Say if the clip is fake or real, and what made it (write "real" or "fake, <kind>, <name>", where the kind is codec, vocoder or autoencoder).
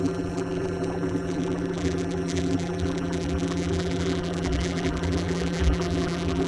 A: fake, vocoder, BigVGAN v2